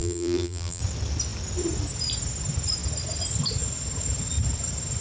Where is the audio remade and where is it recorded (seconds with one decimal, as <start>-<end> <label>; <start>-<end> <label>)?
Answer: 0.0-0.8 remade; 0.8-5.0 recorded